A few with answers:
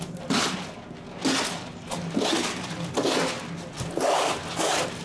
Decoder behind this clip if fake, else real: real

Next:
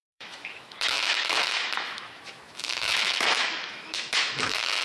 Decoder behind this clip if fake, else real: fake, autoencoder, DAC-VAE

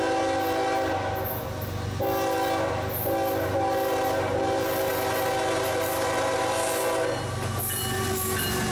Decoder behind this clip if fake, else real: real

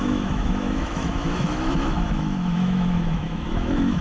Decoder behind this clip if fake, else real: fake, autoencoder, DAC-VAE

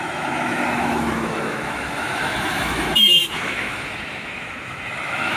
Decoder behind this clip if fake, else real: fake, autoencoder, DAC-VAE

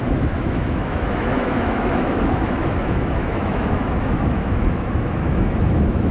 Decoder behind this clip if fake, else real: fake, autoencoder, DAC-VAE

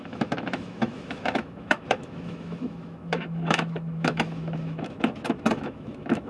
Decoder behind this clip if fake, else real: fake, autoencoder, DAC-VAE